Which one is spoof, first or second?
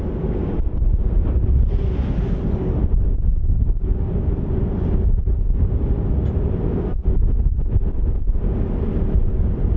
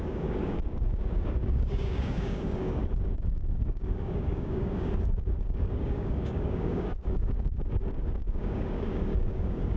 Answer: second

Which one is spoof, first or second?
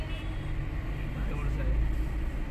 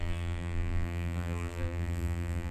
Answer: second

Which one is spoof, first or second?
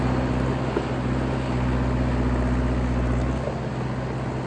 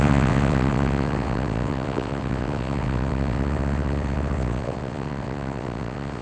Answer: second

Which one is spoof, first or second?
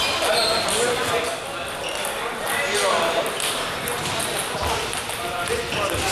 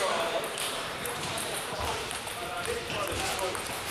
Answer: second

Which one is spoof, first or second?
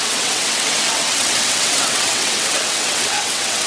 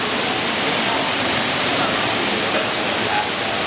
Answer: first